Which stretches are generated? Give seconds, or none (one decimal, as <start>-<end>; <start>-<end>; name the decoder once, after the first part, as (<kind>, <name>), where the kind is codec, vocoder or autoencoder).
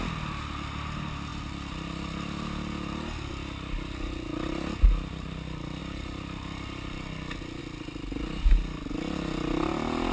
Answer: none